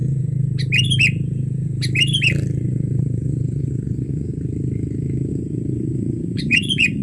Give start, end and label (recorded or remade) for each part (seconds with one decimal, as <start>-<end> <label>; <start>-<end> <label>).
0.0-2.6 recorded; 2.6-4.3 remade; 4.3-5.3 recorded; 5.3-7.0 remade